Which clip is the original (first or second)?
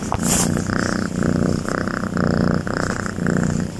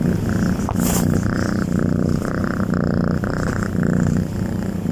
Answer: first